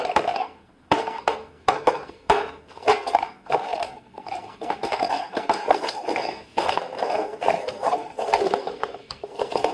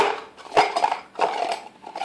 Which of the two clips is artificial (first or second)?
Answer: first